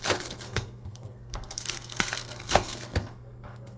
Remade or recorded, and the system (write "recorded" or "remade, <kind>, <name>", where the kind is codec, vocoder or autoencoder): remade, codec, SNAC